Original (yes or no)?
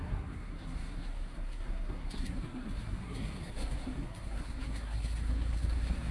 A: no